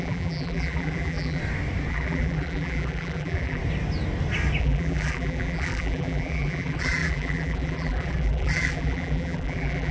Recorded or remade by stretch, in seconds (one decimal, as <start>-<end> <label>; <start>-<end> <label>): 0.0-1.4 remade; 1.4-1.9 recorded; 1.9-3.6 remade; 3.6-4.6 recorded; 4.6-9.9 remade

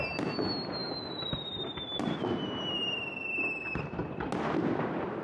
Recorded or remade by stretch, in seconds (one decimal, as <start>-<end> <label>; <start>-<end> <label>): 0.0-5.2 recorded

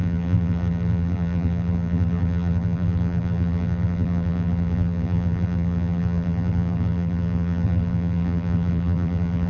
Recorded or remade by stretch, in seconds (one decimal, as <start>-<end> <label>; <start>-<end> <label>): 0.0-9.5 remade

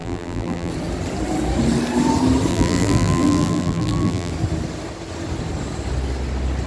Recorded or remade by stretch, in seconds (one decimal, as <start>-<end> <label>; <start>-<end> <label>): 0.0-0.7 remade; 0.7-2.5 recorded; 2.5-4.3 remade; 4.3-6.7 recorded

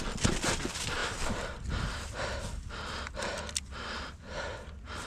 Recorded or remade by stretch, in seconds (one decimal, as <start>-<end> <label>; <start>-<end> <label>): 0.0-5.1 recorded

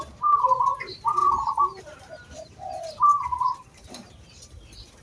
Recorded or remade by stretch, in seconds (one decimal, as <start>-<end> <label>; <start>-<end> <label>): 0.0-5.0 remade

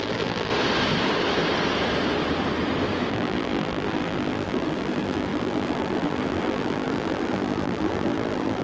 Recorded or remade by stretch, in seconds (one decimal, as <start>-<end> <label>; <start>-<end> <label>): 0.0-0.5 remade; 0.5-3.1 recorded; 3.1-8.6 remade